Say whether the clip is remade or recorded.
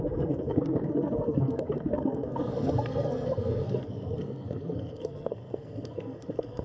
remade